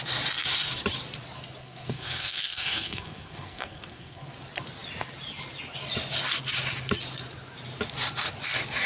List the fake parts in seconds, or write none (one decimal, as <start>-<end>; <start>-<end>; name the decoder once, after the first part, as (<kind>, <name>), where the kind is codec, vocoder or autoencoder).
1.6-4.3 (codec, SNAC)